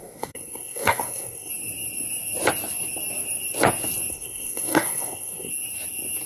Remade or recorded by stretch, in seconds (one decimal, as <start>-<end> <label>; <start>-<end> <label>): 0.0-1.5 remade; 1.5-4.1 recorded; 4.1-5.5 remade; 5.5-6.3 recorded